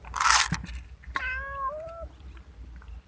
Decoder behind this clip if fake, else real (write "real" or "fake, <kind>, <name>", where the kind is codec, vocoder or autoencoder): real